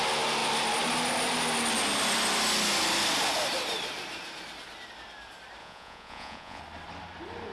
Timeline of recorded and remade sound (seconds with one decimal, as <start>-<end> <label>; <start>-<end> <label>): 0.0-5.6 recorded; 5.6-6.6 remade; 6.6-7.5 recorded

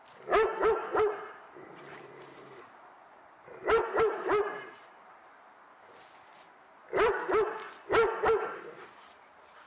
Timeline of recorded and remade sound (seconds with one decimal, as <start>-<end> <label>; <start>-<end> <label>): 0.0-0.9 recorded; 0.9-5.3 remade; 5.3-9.7 recorded

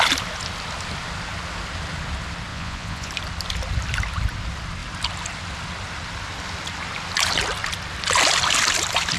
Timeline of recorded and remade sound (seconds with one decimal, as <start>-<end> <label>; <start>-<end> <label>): 0.0-2.5 recorded; 2.5-3.1 remade; 3.1-9.2 recorded

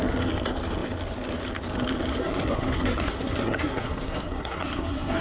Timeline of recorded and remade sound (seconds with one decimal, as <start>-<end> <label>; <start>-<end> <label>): 0.0-2.1 recorded; 2.1-5.2 remade

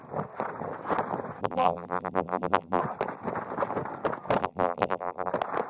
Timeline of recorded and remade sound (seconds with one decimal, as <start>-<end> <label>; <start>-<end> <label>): 0.0-1.4 recorded; 1.4-2.8 remade; 2.8-4.4 recorded; 4.4-5.3 remade; 5.3-5.7 recorded

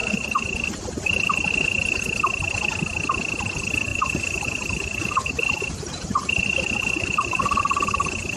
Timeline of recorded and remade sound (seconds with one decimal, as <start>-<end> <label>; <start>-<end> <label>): 0.0-2.0 remade; 2.0-3.9 recorded; 3.9-7.6 remade; 7.6-8.4 recorded